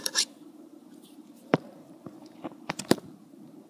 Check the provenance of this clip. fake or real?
fake